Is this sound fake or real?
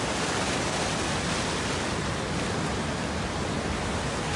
real